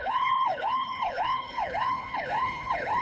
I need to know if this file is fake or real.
fake